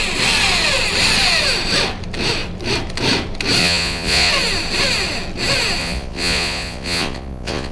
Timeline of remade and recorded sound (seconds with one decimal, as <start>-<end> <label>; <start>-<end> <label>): 0.0-3.6 recorded; 3.6-4.3 remade; 4.3-5.8 recorded; 5.8-7.7 remade